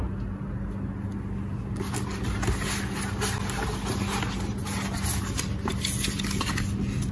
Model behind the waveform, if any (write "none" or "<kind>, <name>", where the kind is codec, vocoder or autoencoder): none